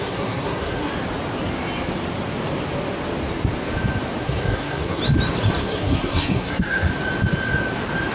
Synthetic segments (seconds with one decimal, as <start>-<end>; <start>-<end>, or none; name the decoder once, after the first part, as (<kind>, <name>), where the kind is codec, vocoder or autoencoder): 0.0-0.9 (codec, SNAC); 4.2-5.0; 5.6-6.9